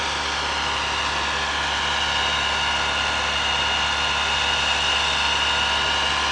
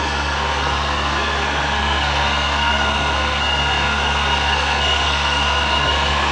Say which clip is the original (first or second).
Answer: first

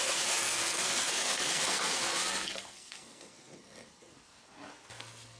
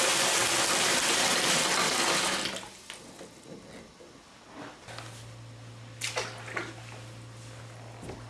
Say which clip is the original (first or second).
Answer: second